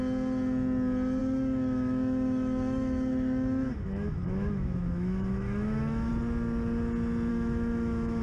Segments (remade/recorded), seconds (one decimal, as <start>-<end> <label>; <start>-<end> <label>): 0.0-1.2 recorded; 1.2-6.1 remade; 6.1-7.3 recorded; 7.3-8.2 remade